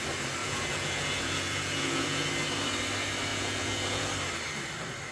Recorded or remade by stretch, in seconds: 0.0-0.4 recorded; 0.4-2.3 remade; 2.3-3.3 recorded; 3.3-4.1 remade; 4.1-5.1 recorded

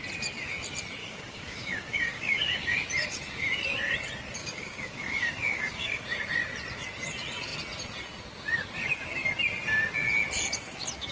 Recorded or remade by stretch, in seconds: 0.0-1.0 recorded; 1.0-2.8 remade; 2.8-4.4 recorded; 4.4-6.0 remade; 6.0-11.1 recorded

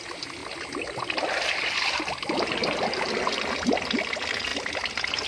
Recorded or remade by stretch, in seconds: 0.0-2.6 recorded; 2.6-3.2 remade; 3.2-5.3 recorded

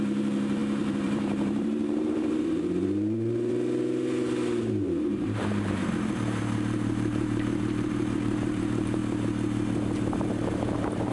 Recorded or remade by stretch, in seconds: 0.0-3.5 remade; 3.5-4.6 recorded; 4.6-9.0 remade; 9.0-10.5 recorded; 10.5-11.1 remade

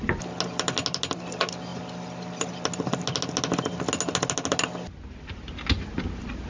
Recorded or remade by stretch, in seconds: 0.0-6.5 recorded

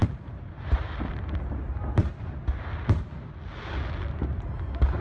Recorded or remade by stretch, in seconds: 0.0-1.4 remade; 1.4-5.0 recorded